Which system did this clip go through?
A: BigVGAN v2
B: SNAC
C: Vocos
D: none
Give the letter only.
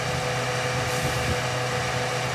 D